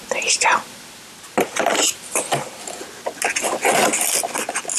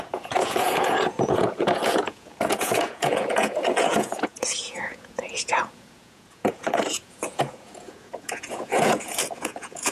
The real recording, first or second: first